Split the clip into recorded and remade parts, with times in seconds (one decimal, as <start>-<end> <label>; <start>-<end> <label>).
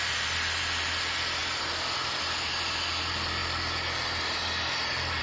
0.0-1.4 recorded; 1.4-2.5 remade; 2.5-5.2 recorded